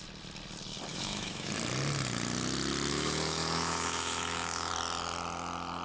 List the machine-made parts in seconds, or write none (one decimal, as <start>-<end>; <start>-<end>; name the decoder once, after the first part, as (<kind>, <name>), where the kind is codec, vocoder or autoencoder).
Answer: 0.9-1.5 (autoencoder, DAC-VAE); 2.9-4.7